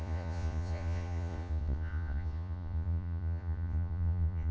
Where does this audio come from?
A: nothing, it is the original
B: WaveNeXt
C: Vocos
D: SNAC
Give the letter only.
C